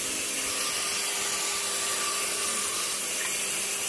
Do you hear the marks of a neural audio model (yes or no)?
no